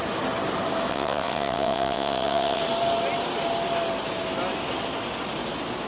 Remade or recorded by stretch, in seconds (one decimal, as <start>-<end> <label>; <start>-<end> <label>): 0.0-0.9 recorded; 0.9-2.6 remade; 2.6-5.9 recorded